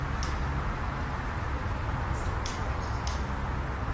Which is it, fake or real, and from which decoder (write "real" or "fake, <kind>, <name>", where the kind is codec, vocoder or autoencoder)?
real